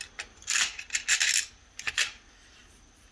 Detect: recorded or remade recorded